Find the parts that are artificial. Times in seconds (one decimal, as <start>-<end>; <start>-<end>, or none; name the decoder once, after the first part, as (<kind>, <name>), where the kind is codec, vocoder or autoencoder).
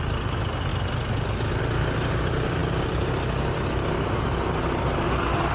none